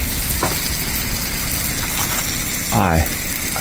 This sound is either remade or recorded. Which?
recorded